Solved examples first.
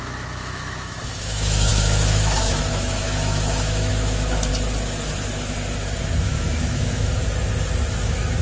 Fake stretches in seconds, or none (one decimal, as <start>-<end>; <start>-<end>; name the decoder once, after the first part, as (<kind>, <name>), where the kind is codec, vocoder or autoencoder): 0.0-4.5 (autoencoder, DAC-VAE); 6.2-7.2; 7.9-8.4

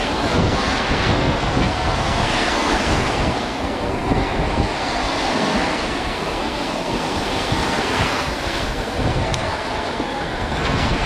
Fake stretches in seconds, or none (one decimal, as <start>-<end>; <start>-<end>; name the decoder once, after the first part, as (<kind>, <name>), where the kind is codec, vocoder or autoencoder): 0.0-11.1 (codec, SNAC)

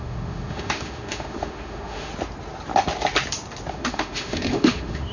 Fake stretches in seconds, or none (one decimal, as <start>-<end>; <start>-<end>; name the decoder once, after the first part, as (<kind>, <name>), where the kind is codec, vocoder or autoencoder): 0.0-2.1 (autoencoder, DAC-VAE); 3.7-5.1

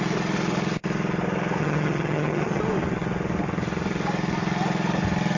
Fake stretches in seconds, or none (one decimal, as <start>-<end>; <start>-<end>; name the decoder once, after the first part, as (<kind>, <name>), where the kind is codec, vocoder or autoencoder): 1.6-2.6 (vocoder, HiFi-GAN)

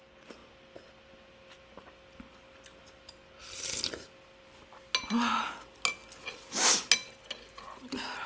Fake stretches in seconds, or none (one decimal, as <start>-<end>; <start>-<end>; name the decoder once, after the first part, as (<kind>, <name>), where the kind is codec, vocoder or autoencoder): none

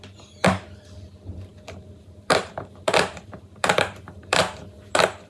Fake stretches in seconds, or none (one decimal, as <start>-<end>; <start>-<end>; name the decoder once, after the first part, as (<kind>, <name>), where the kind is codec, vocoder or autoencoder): 0.0-4.4 (vocoder, BigVGAN v2)